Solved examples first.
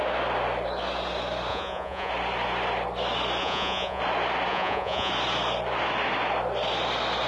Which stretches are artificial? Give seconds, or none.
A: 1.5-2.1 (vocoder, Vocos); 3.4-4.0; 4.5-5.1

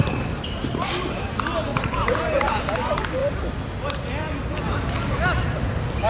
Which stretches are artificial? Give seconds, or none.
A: none

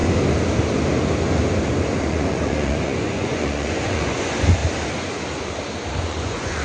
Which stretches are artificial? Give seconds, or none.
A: 2.1-4.6 (vocoder, Vocos); 5.9-6.6

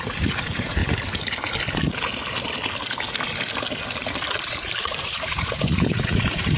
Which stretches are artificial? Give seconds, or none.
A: 0.0-0.8 (vocoder, Vocos); 4.8-6.6